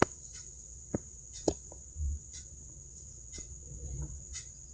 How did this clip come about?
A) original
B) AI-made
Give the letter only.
B